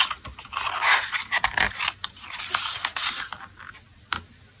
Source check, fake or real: real